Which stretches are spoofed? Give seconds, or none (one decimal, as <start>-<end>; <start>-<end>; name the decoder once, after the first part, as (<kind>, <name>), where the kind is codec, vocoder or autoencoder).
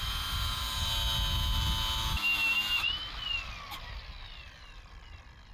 2.8-4.9 (vocoder, BigVGAN v2)